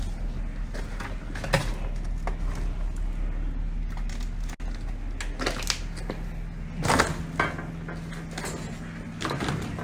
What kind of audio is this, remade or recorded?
recorded